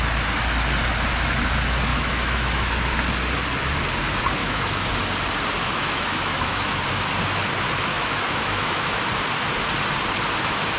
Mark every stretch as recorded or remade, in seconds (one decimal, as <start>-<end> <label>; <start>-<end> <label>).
0.0-1.9 recorded; 1.9-2.7 remade; 2.7-4.4 recorded; 4.4-4.9 remade; 4.9-5.6 recorded; 5.6-6.8 remade; 6.8-7.9 recorded; 7.9-9.0 remade; 9.0-10.8 recorded